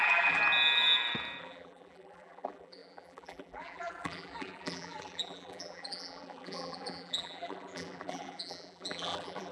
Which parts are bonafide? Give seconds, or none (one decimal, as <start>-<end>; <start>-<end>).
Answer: 0.4-1.4